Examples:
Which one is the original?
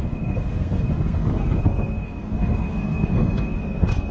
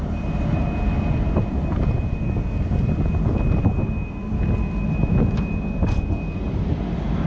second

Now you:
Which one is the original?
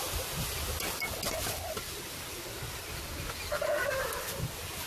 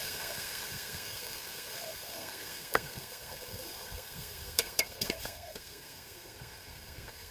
first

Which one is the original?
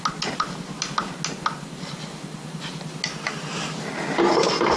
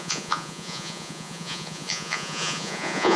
first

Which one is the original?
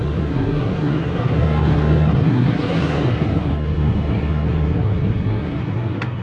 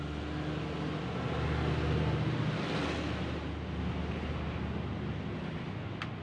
second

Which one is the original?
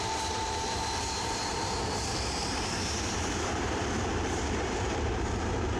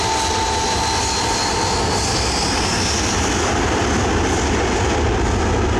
second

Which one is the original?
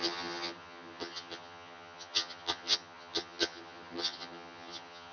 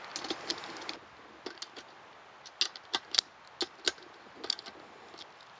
second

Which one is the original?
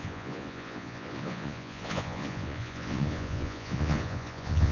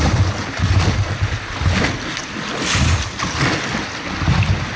second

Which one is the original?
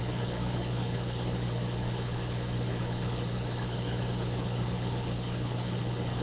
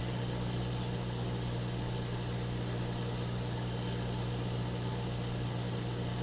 second